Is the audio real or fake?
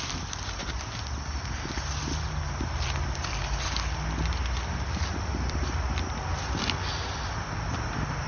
real